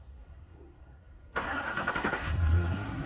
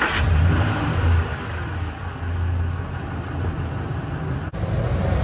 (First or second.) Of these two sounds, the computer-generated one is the first